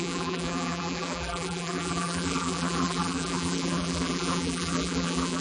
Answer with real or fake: fake